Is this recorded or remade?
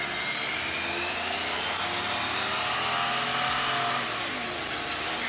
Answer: recorded